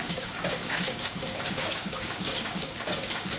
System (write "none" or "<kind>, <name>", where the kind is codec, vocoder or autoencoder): codec, DAC